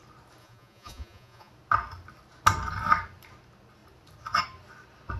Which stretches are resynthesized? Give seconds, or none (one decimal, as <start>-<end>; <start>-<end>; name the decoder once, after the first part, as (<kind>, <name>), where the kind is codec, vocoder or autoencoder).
0.4-1.5 (vocoder, Vocos)